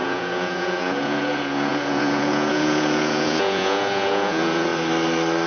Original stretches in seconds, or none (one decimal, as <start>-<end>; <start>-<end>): 4.7-5.5